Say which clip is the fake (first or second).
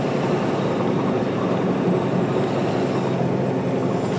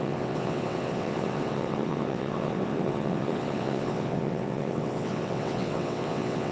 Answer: second